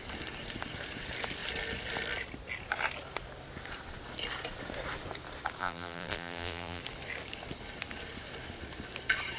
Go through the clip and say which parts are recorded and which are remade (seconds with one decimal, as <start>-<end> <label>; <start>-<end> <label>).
0.0-5.6 recorded; 5.6-6.8 remade; 6.8-9.4 recorded